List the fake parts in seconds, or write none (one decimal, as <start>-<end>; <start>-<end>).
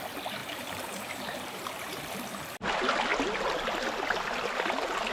0.4-2.0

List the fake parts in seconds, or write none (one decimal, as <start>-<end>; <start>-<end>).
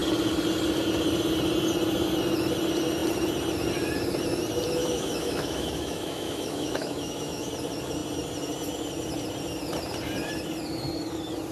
4.8-7.5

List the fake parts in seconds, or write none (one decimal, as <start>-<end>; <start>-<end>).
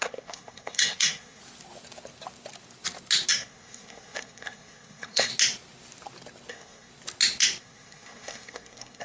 0.0-1.4; 3.3-5.3; 6.5-6.9; 7.6-9.0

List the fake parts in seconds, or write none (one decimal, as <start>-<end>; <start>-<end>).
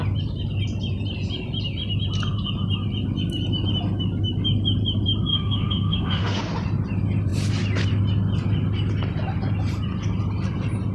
5.3-6.4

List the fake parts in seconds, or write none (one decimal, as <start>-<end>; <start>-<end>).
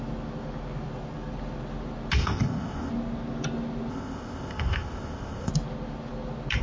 2.2-2.9; 3.9-5.5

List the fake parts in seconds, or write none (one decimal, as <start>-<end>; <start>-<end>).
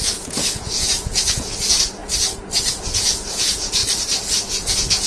0.0-2.0; 2.7-3.8; 4.6-5.1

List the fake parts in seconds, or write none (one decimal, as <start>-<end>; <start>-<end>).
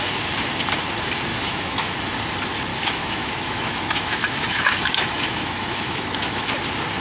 1.3-1.9; 2.7-6.4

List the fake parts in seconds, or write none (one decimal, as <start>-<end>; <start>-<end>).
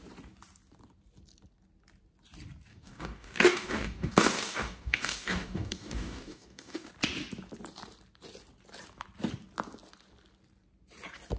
2.7-6.9